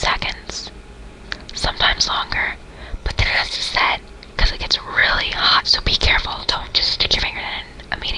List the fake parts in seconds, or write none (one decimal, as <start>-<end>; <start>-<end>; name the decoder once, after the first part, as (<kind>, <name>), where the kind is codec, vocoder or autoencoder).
2.9-3.7 (codec, HILCodec); 6.4-7.2

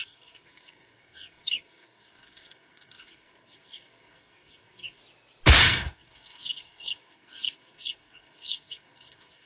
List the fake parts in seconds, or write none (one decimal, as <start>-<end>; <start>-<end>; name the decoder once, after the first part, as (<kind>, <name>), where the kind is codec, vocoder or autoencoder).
0.0-5.0 (codec, SNAC); 5.6-9.5

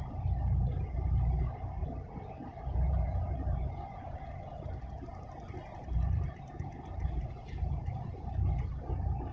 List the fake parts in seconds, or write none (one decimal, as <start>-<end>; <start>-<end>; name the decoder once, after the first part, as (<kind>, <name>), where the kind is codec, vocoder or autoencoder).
1.8-4.4 (vocoder, BigVGAN v2); 5.1-8.4

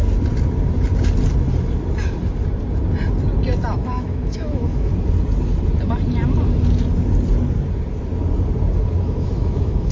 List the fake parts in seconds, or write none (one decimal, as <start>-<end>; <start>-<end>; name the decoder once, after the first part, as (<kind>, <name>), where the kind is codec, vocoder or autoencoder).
3.7-4.9 (autoencoder, DAC-VAE); 9.0-9.9